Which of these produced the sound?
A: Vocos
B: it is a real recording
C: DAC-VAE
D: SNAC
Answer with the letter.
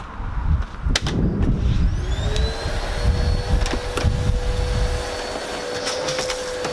B